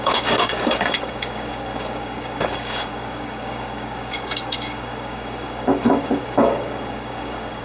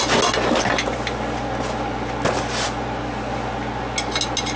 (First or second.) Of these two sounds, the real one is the second